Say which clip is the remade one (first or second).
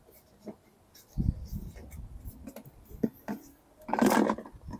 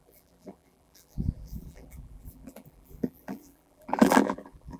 second